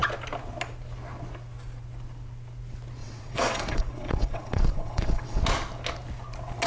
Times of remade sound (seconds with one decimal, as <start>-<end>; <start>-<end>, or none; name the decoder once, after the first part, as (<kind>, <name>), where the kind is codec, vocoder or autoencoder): 3.0-5.4 (vocoder, WaveNeXt)